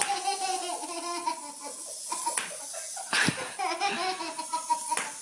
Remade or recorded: recorded